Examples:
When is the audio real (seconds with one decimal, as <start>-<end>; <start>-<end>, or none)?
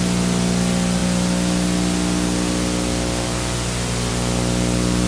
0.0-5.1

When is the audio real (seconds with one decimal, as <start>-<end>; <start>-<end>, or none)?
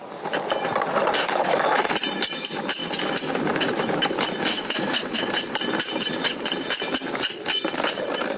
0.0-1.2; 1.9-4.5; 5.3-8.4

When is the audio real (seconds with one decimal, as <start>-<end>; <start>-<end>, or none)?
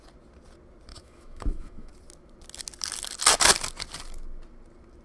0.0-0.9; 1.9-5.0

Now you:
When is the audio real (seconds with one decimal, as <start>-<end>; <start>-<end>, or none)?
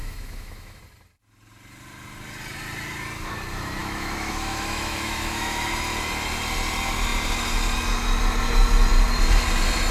0.8-3.8; 5.7-9.9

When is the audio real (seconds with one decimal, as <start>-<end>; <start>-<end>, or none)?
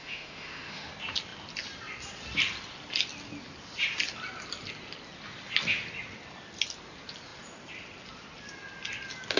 0.9-9.4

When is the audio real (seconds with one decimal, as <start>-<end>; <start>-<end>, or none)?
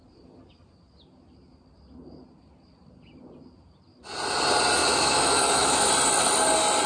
0.0-4.8; 5.9-6.9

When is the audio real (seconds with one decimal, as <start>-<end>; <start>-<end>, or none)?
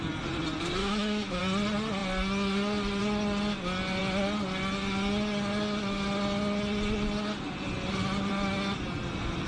0.0-0.8; 1.4-9.5